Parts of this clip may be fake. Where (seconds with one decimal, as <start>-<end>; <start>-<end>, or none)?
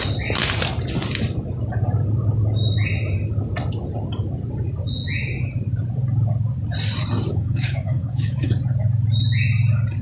7.3-8.5